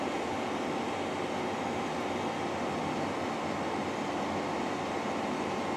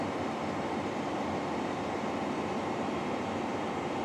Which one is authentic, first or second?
first